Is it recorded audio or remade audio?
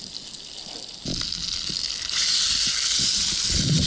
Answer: recorded